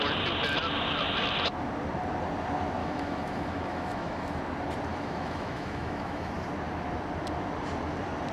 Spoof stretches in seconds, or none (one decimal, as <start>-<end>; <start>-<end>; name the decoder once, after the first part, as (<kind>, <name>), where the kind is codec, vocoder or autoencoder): 2.8-4.4 (autoencoder, DAC-VAE); 4.9-6.3